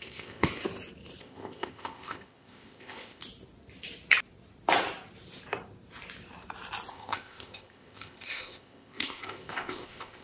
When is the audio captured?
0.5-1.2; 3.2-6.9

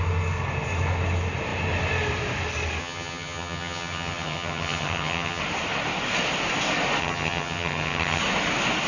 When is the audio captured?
0.0-2.8; 5.4-7.0; 8.2-8.9

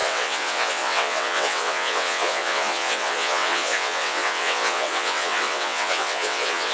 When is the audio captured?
none

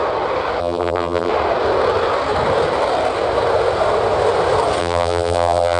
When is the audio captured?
0.0-0.6; 1.3-4.8

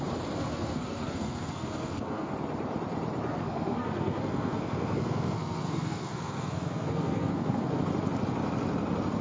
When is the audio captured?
0.0-0.4; 2.3-3.3; 7.8-9.2

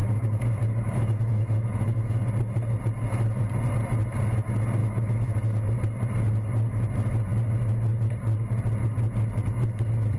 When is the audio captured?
2.3-4.8; 5.4-10.2

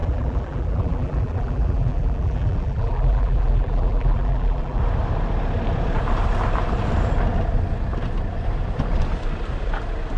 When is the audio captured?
4.8-10.2

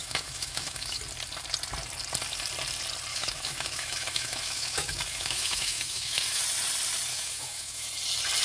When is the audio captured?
1.0-3.1; 6.4-7.1; 7.9-8.4